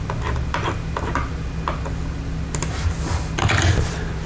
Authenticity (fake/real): real